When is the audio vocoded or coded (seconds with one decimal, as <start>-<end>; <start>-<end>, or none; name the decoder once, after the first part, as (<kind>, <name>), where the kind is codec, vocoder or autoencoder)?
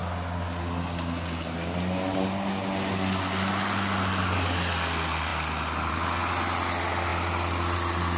none